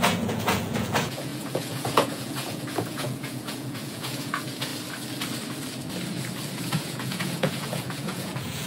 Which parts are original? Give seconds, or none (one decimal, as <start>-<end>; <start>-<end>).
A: 4.7-6.6